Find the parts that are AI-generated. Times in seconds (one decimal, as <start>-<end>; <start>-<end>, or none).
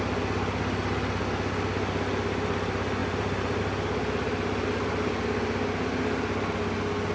3.0-3.6